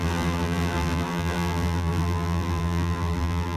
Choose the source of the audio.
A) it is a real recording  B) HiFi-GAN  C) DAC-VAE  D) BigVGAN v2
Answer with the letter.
D